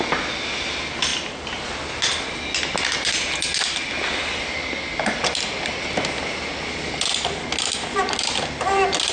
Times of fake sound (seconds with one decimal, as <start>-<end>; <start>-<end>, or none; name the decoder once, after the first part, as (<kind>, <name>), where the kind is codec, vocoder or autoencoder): none